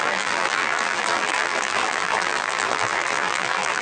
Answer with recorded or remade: remade